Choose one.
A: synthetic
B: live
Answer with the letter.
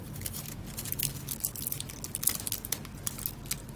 B